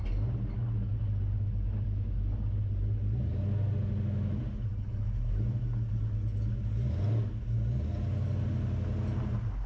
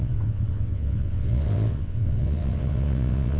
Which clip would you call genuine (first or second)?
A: first